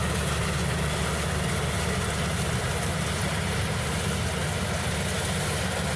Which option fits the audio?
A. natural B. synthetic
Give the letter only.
A